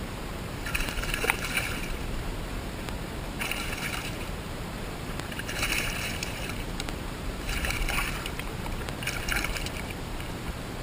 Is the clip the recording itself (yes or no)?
no